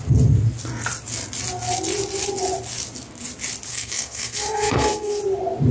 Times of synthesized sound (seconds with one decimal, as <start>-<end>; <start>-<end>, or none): 3.7-5.2